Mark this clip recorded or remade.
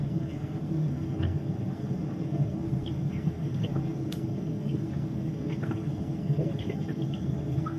remade